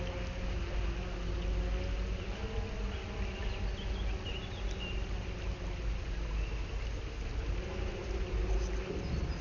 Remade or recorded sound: recorded